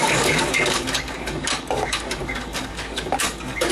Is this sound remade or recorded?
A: remade